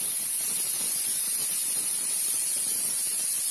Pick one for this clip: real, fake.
fake